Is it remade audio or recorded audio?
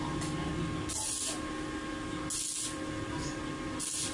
recorded